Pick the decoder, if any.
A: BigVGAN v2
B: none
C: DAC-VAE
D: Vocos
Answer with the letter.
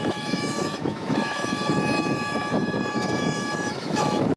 C